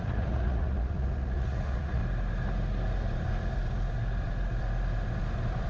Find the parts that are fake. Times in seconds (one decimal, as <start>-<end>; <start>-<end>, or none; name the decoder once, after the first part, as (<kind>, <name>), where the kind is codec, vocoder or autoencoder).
0.0-2.0 (vocoder, Vocos)